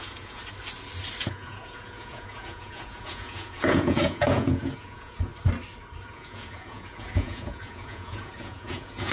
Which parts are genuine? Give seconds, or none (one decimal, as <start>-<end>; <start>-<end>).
0.4-1.2; 5.3-6.1